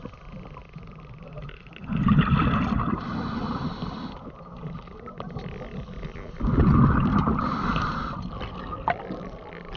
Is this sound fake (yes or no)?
no